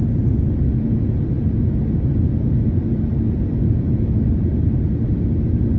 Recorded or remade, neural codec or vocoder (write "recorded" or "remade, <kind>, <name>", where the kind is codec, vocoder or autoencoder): recorded